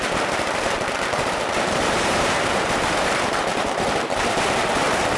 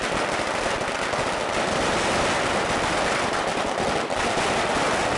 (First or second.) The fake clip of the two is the first